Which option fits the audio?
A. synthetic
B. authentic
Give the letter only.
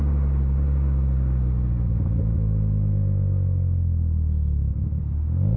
B